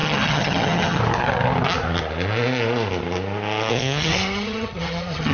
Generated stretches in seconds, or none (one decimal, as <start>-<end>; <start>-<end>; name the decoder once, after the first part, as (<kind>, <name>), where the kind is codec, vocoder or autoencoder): 0.0-1.0 (vocoder, HiFi-GAN); 3.7-5.3